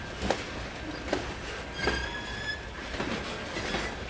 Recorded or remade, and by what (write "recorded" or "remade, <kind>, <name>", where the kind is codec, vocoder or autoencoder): recorded